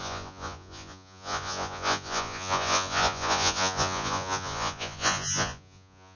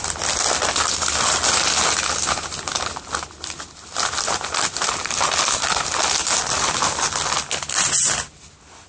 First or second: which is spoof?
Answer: first